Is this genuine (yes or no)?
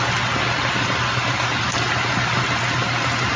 yes